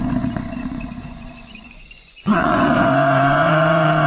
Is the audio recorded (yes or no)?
no